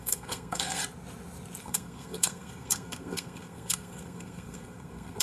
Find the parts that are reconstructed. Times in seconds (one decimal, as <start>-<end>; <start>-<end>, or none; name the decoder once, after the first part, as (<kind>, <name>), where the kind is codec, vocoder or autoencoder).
0.0-0.8 (codec, SNAC); 1.6-5.2